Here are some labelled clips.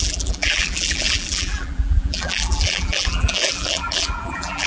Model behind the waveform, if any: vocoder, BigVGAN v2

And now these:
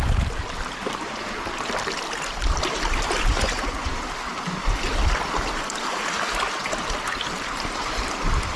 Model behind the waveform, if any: none